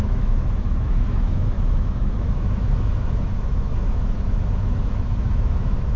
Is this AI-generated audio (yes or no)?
yes